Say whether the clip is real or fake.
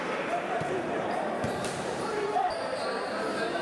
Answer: fake